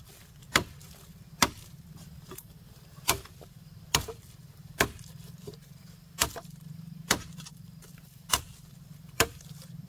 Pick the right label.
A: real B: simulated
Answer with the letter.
B